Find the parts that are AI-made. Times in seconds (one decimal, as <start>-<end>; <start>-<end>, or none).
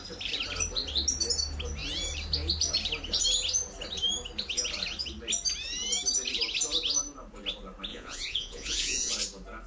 7.9-9.1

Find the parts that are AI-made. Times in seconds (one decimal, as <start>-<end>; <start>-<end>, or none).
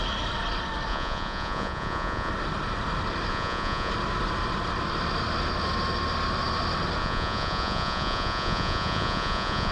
0.9-2.3; 3.3-3.9; 7.0-9.7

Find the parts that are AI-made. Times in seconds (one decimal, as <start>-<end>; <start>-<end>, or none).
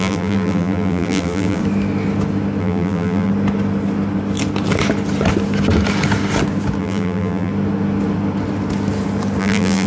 0.0-1.6; 2.6-3.3; 6.8-7.5; 9.4-9.9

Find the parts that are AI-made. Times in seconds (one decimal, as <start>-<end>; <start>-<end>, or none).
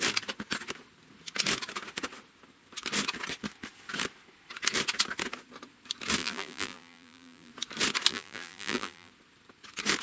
6.2-7.5; 8.1-9.1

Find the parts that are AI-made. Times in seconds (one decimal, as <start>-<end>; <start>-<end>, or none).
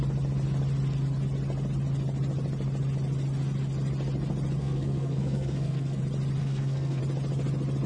4.6-6.0; 6.4-7.0